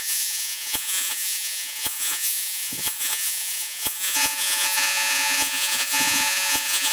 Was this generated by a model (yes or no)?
yes